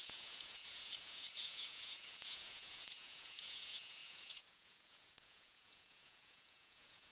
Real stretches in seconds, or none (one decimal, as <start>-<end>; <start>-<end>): none